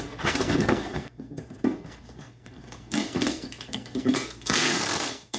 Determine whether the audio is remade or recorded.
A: remade